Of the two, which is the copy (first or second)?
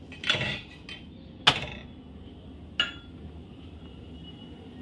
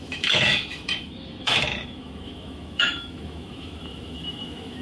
second